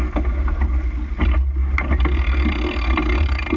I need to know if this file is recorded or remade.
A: recorded